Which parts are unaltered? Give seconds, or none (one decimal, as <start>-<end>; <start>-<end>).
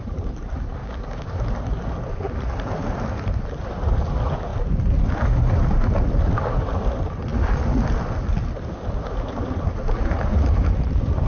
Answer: 0.0-0.8; 1.3-11.3